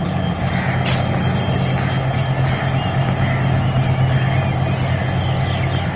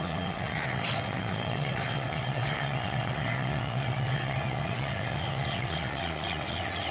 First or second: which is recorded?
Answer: first